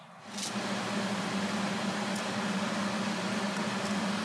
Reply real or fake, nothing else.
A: real